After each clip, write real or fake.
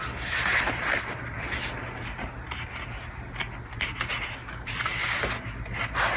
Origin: real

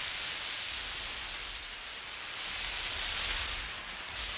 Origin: real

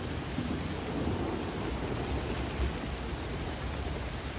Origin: real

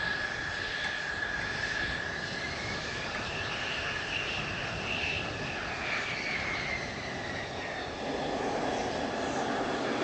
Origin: real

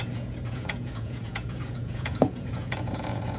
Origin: fake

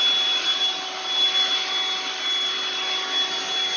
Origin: real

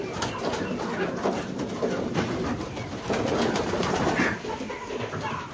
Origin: fake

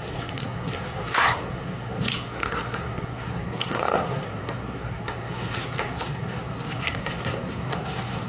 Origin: fake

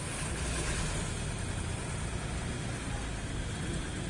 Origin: real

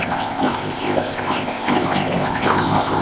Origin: fake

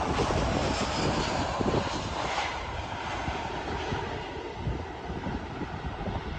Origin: real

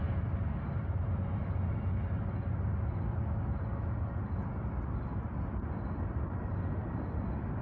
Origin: real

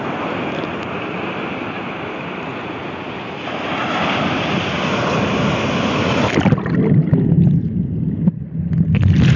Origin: real